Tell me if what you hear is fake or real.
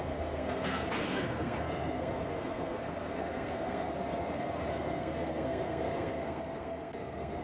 fake